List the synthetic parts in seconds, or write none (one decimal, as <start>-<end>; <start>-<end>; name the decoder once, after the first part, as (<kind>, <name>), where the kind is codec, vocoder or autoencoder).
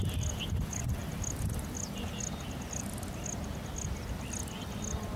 none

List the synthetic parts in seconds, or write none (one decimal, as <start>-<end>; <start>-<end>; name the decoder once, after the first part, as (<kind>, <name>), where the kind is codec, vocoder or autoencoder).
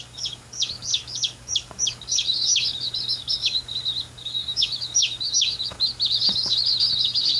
0.0-7.4 (codec, DAC)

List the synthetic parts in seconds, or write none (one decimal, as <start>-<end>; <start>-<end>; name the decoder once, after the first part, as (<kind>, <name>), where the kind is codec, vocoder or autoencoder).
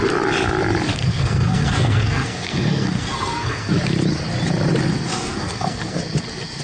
0.9-3.7 (codec, SNAC); 5.1-6.0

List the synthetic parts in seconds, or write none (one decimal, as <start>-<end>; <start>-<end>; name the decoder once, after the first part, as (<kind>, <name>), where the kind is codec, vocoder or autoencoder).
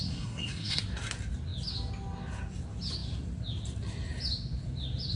0.0-0.8 (codec, SNAC)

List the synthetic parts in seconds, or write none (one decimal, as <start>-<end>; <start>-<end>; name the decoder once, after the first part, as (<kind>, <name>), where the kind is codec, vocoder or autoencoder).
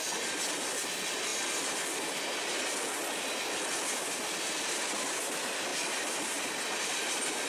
none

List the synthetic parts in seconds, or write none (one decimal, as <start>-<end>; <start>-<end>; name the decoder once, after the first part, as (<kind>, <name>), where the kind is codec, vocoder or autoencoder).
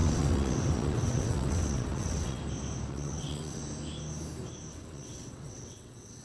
0.0-2.4 (vocoder, WaveNeXt); 2.9-3.6; 4.7-6.2